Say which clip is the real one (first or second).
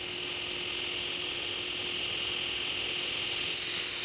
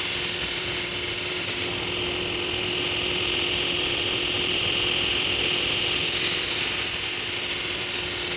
first